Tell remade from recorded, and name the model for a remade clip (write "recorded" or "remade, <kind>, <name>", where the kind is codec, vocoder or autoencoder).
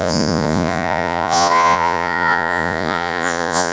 remade, vocoder, Vocos